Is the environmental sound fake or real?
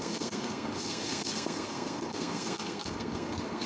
fake